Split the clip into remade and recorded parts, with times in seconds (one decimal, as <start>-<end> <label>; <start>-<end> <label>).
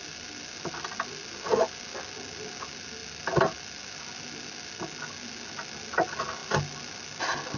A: 0.0-7.6 recorded